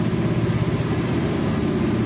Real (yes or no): yes